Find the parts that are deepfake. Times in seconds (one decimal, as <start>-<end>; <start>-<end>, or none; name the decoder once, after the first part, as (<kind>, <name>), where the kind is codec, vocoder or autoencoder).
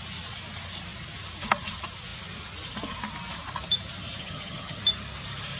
4.2-4.8 (vocoder, HiFi-GAN)